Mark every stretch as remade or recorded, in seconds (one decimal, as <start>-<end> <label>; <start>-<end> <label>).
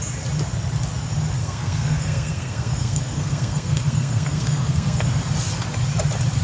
0.0-1.4 recorded; 1.4-5.2 remade; 5.2-6.4 recorded